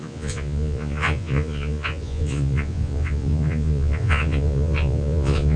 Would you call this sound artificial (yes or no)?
yes